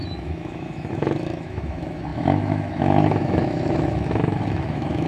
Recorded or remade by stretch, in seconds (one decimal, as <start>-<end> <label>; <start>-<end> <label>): 0.0-5.1 remade